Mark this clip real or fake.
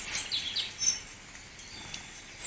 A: real